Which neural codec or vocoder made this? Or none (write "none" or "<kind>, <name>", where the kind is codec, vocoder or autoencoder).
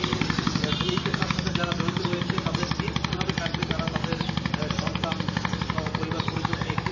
none